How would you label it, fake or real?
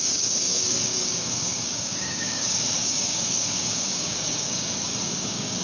fake